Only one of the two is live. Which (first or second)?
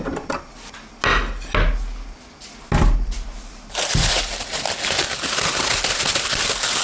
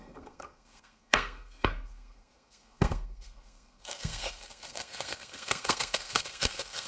first